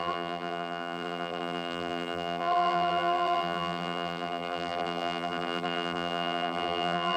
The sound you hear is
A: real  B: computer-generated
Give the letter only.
B